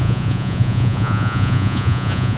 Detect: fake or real fake